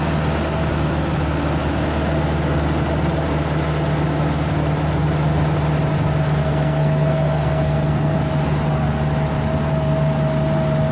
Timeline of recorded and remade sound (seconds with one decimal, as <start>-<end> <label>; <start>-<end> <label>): 0.0-6.4 recorded; 6.4-8.2 remade; 8.2-10.9 recorded